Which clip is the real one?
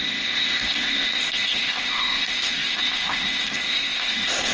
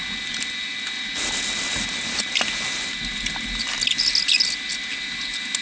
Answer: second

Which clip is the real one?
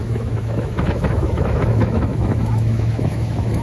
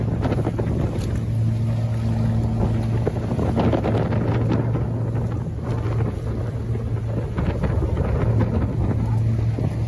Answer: second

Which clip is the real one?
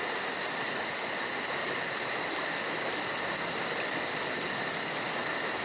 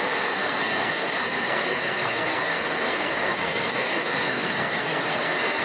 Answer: first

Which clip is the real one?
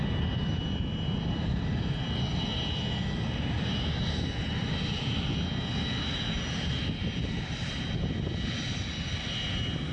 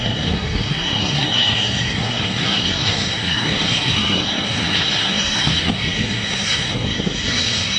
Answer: first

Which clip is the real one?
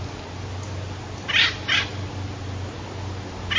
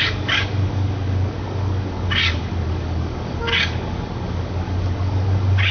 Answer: first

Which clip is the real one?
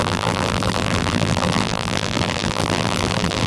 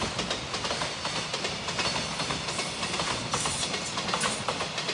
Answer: second